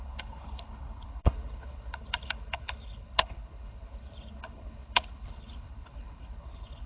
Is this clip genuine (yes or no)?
no